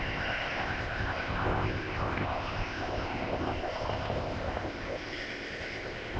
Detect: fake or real fake